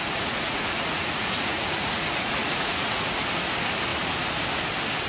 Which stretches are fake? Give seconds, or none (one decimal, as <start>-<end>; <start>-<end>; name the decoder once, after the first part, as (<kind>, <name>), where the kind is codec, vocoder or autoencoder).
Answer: 0.0-3.1 (vocoder, Vocos)